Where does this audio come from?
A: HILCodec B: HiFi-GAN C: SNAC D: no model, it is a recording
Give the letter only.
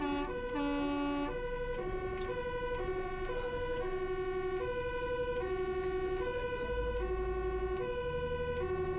D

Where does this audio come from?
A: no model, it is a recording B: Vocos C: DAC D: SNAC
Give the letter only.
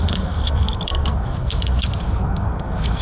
D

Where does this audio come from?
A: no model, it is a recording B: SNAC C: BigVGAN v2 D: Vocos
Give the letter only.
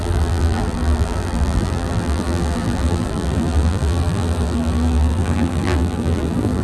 C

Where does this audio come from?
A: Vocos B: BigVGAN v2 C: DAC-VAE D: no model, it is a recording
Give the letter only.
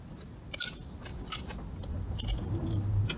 D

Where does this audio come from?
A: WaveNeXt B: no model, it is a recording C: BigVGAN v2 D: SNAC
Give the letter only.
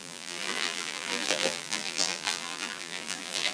C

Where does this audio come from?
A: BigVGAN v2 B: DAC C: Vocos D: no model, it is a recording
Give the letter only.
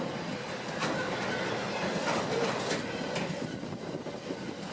D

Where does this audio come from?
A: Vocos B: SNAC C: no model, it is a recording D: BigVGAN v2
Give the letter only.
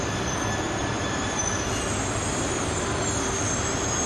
C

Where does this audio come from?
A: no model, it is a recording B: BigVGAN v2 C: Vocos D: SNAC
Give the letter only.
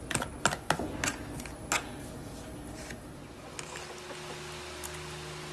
A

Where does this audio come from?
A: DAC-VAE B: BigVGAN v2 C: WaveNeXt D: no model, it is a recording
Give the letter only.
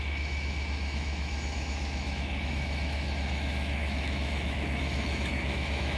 A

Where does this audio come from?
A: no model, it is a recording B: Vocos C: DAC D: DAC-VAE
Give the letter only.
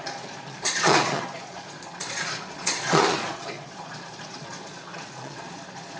B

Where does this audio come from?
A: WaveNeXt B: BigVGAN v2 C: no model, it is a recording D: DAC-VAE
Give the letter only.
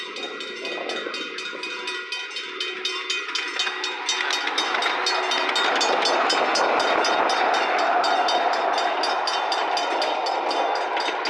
C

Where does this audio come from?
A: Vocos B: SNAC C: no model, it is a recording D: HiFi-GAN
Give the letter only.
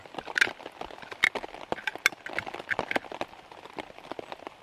C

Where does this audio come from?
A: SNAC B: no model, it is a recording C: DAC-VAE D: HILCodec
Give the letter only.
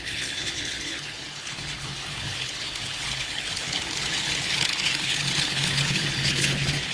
D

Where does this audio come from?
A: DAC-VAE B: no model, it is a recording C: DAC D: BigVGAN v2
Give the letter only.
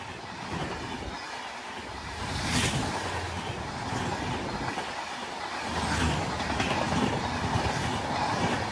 D